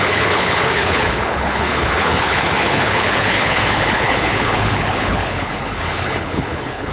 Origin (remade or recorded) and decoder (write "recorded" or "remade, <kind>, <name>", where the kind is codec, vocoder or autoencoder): remade, codec, HILCodec